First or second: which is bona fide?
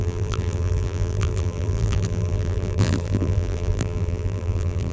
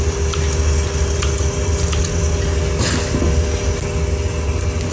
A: second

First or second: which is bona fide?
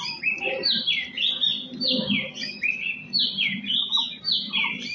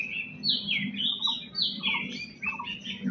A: second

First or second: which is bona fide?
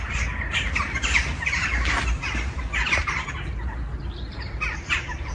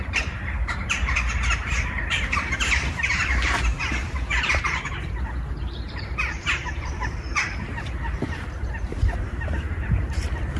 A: first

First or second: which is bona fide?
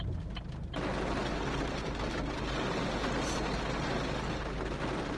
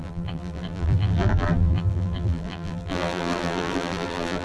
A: first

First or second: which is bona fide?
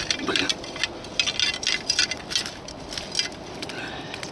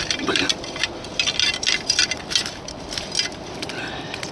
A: first